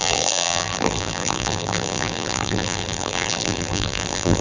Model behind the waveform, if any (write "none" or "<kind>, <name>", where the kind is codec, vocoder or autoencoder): vocoder, BigVGAN v2